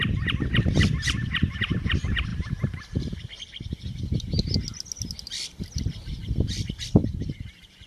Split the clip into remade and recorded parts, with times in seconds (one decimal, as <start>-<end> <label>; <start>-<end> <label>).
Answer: 0.0-2.3 recorded; 2.3-3.4 remade; 3.4-7.0 recorded; 7.0-7.9 remade